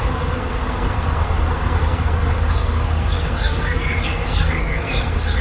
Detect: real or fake fake